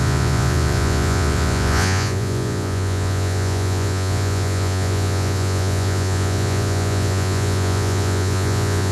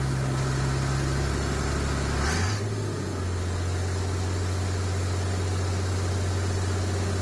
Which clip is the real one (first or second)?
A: second